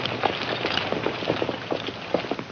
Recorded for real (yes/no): yes